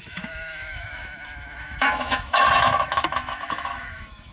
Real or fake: fake